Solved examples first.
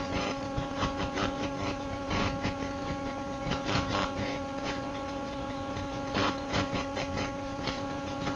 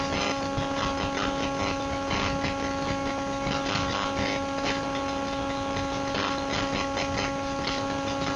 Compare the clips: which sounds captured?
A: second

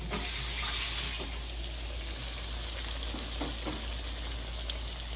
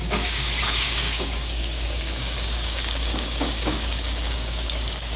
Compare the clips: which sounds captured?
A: first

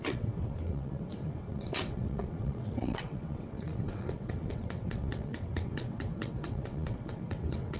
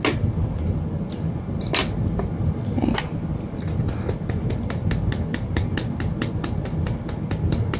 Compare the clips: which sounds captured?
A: second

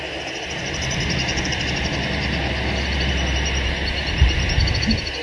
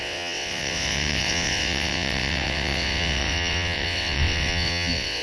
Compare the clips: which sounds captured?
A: first